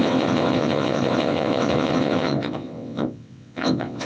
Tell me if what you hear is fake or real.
fake